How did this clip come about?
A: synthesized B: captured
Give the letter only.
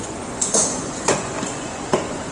A